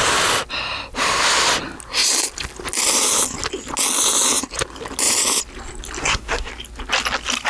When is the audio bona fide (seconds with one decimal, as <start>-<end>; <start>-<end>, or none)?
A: 0.0-6.0; 6.5-7.5